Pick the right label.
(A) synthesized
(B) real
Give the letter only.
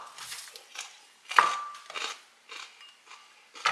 B